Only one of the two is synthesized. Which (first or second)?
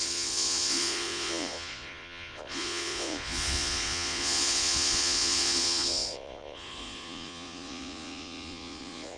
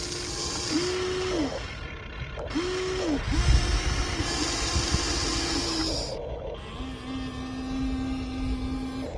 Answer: first